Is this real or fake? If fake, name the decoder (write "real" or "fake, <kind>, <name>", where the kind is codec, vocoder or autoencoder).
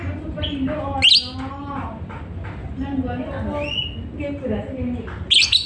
real